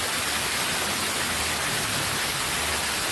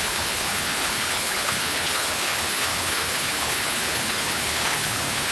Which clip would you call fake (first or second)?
second